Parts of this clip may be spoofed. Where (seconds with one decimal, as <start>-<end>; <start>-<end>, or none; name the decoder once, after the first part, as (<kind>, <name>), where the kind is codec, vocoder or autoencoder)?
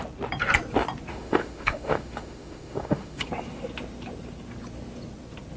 1.1-3.3 (autoencoder, DAC-VAE)